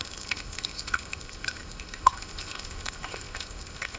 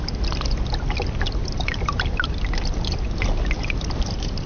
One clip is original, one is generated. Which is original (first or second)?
second